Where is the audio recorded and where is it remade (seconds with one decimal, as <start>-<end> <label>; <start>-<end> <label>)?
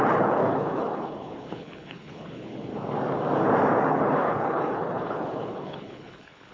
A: 0.0-2.7 remade; 2.7-3.9 recorded; 3.9-6.5 remade